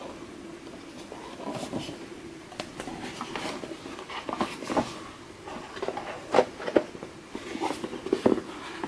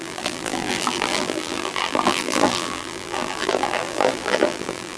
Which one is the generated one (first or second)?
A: second